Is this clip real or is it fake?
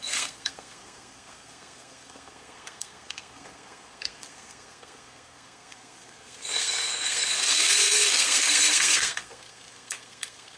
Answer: fake